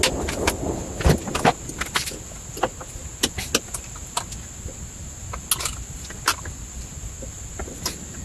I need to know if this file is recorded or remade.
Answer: recorded